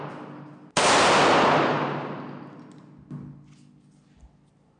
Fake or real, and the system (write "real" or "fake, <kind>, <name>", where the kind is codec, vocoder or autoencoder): real